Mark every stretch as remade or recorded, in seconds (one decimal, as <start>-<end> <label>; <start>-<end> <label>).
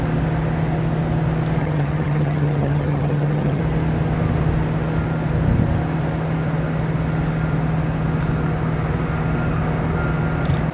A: 0.0-1.6 recorded; 1.6-3.6 remade; 3.6-10.7 recorded